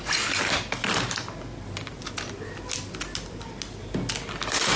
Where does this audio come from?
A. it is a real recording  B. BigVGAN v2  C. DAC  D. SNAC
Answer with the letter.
A